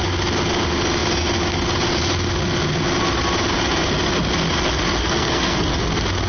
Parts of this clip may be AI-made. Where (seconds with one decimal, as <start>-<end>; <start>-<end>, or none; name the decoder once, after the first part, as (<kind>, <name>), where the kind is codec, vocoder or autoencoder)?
5.0-5.7 (codec, SNAC)